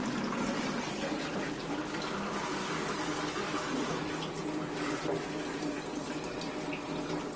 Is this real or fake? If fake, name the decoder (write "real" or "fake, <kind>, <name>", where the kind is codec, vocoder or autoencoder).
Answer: real